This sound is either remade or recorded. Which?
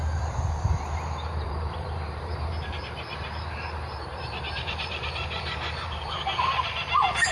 remade